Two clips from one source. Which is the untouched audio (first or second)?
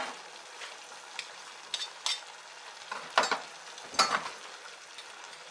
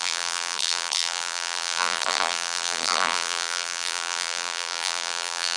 first